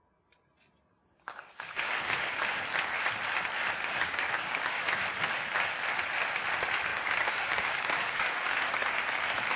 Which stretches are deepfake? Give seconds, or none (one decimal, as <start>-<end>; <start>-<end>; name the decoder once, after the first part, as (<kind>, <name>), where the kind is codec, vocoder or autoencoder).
1.0-1.9 (codec, DAC); 3.8-4.8; 6.9-9.0